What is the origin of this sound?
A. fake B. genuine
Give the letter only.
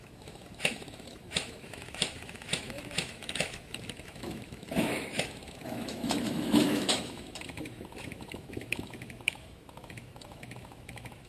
A